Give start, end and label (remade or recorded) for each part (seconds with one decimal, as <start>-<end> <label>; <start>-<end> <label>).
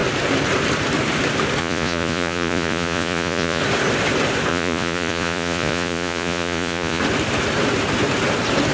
0.0-1.6 recorded; 1.6-3.6 remade; 3.6-4.5 recorded; 4.5-7.0 remade; 7.0-8.7 recorded